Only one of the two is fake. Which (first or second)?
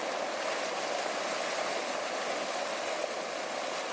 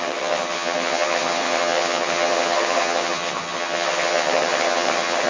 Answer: second